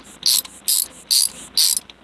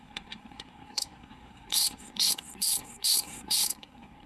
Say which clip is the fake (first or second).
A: second